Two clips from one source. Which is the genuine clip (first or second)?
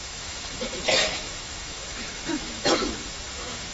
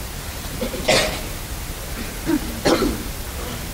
second